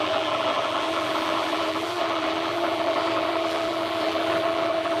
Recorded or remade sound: remade